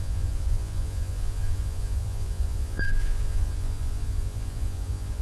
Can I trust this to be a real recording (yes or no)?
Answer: no